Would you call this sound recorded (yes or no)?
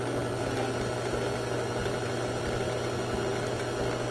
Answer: yes